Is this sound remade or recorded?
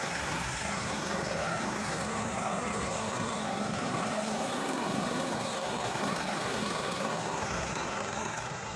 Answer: remade